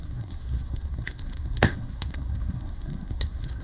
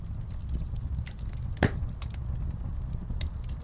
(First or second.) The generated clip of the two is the first